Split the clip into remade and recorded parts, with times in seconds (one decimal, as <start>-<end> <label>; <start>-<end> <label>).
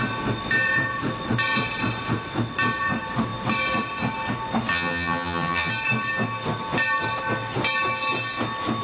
0.0-4.7 recorded; 4.7-5.7 remade; 5.7-8.8 recorded